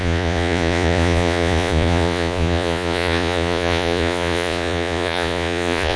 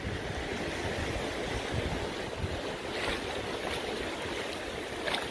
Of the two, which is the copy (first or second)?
first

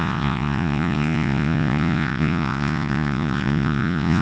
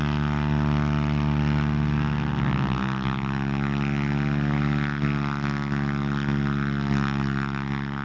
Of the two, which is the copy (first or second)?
first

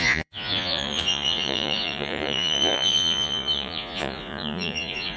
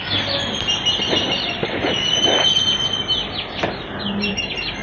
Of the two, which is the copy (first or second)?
first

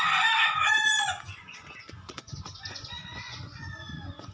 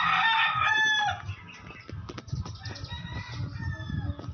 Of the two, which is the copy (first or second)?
first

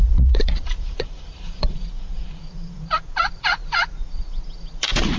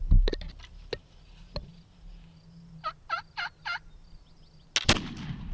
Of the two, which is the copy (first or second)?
first